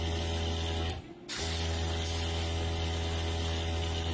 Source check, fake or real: real